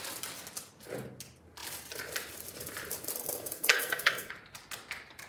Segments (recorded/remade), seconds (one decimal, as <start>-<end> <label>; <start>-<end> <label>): 0.0-3.2 recorded; 3.2-4.3 remade; 4.3-5.3 recorded